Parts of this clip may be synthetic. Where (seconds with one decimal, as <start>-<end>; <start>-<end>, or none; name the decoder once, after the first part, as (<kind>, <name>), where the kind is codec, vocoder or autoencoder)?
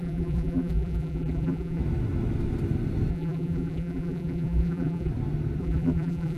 0.0-1.8 (vocoder, BigVGAN v2); 3.1-5.1; 5.6-6.4